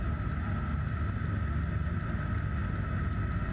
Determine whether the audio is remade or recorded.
recorded